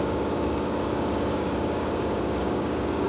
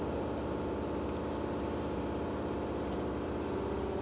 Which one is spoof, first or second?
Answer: first